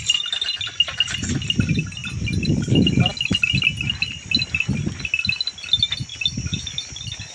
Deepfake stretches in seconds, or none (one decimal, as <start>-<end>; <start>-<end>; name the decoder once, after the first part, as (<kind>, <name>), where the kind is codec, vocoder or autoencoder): none